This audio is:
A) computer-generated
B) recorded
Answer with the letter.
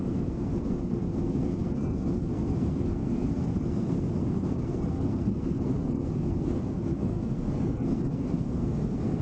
A